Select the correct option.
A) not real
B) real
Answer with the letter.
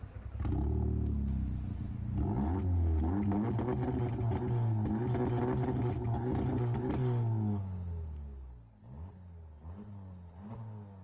B